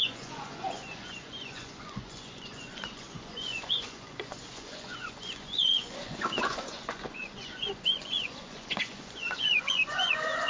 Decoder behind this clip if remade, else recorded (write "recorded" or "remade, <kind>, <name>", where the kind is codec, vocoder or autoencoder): remade, vocoder, Vocos